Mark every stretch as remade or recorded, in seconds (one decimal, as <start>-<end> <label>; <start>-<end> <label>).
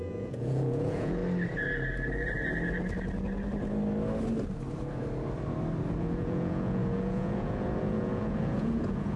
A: 0.0-1.2 remade; 1.2-6.0 recorded; 6.0-9.2 remade